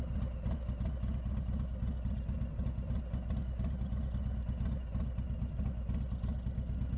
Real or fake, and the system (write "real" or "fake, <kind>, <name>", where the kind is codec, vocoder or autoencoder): real